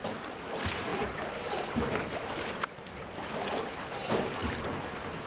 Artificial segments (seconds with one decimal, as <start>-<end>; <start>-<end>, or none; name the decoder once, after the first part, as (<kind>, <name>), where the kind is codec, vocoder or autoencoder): 0.9-3.1 (vocoder, BigVGAN v2)